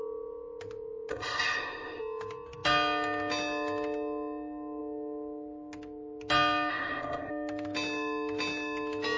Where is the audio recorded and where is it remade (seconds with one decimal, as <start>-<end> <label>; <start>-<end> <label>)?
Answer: 0.0-1.1 recorded; 1.1-2.0 remade; 2.0-6.7 recorded; 6.7-7.3 remade; 7.3-9.2 recorded